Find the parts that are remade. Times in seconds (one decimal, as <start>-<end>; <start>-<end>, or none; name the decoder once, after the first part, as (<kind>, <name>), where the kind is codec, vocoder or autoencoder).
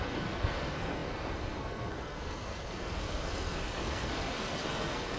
0.0-5.2 (codec, SNAC)